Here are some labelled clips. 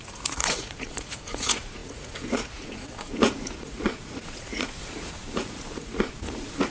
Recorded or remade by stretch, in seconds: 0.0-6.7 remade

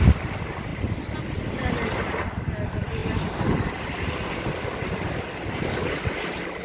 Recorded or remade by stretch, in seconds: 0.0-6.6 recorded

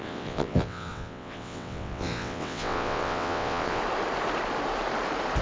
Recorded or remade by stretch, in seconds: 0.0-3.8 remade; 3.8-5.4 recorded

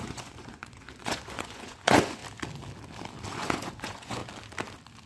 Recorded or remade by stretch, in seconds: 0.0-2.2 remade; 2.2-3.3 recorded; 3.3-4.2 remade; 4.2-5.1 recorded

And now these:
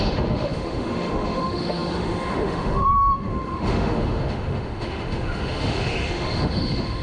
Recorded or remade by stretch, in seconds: 0.0-7.0 remade